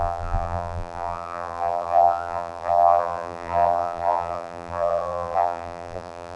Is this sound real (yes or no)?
no